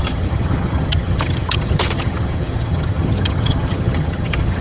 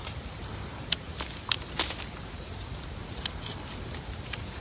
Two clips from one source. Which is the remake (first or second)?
first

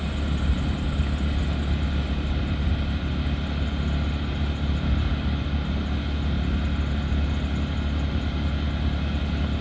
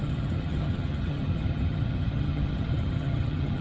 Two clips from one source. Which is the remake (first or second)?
second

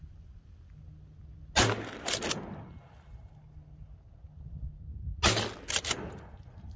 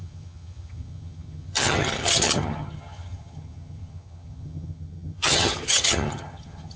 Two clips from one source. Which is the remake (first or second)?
second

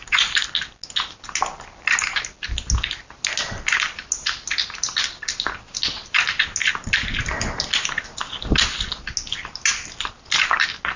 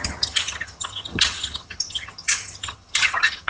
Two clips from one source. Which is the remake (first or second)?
second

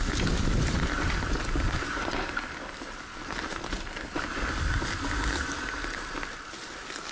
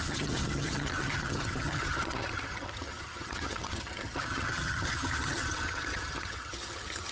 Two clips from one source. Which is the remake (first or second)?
second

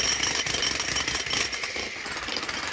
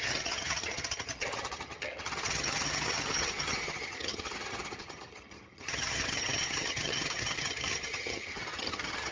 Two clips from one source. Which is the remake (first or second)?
second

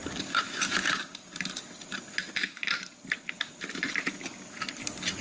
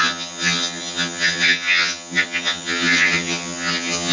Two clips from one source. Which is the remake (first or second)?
second